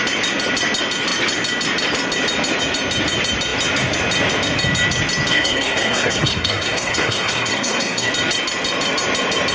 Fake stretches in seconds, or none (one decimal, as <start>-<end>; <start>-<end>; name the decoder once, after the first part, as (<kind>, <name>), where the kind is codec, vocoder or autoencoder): 5.3-8.1 (codec, SNAC)